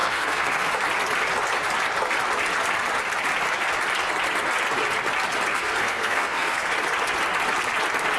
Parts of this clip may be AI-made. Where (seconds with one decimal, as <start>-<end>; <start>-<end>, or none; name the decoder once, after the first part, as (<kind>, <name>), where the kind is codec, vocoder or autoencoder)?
0.0-0.7 (codec, SNAC); 5.5-6.7